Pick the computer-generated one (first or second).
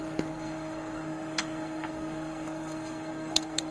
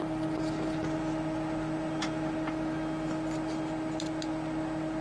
first